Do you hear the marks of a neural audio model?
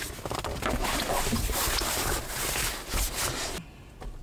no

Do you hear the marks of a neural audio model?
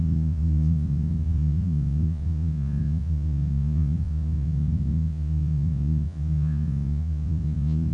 yes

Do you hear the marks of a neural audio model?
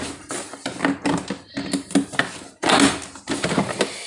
no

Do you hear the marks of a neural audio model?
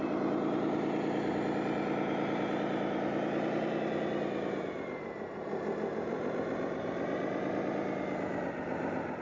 no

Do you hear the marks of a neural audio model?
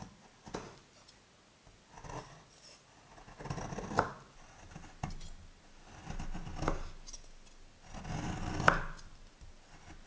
no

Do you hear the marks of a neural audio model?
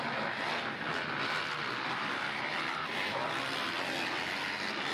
no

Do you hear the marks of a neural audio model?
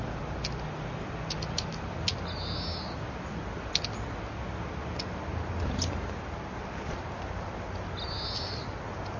no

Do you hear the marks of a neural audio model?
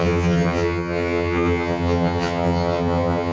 yes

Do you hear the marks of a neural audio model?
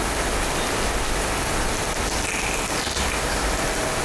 no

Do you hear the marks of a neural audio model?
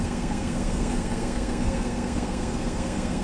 yes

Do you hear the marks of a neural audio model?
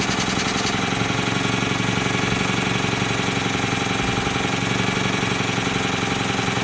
no